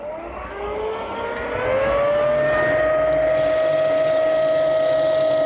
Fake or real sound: real